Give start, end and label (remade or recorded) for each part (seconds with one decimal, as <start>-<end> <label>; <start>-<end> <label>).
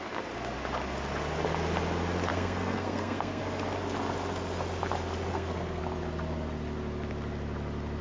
0.0-2.3 recorded; 2.3-3.4 remade; 3.4-5.3 recorded; 5.3-5.8 remade; 5.8-8.0 recorded